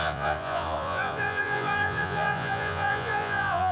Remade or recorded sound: remade